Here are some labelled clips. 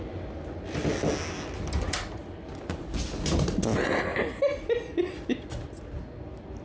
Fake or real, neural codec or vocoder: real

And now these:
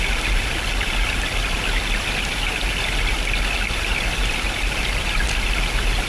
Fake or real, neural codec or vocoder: real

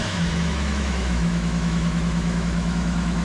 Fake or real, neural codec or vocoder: fake, autoencoder, DAC-VAE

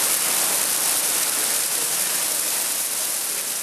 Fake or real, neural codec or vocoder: real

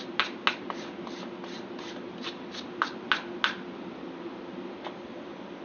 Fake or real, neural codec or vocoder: real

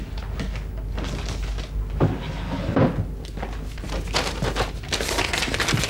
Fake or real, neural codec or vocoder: real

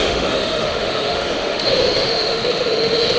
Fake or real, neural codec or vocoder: fake, autoencoder, DAC-VAE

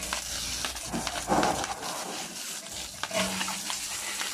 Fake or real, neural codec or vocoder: real